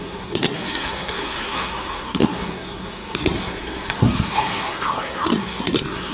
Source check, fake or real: fake